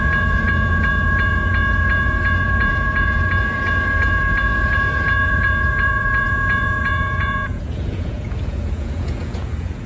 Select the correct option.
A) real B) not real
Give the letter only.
B